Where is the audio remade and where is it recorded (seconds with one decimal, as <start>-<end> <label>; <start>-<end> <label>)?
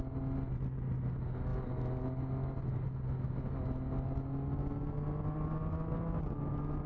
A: 0.0-6.9 recorded